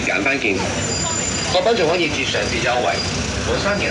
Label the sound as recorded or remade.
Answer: recorded